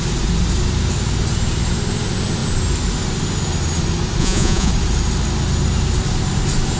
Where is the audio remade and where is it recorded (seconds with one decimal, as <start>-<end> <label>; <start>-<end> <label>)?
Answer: 0.0-4.2 recorded; 4.2-4.7 remade; 4.7-6.8 recorded